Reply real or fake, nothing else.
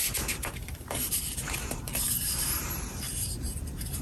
fake